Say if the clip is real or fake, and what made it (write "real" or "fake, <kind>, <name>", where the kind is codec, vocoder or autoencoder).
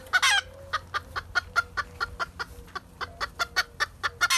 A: real